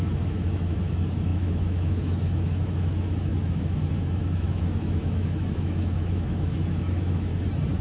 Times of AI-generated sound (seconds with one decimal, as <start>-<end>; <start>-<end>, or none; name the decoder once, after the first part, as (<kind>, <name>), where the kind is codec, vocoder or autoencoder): 0.0-7.3 (autoencoder, DAC-VAE)